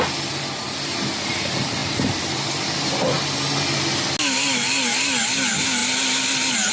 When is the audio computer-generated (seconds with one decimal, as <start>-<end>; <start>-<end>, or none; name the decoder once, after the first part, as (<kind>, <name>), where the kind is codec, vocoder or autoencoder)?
none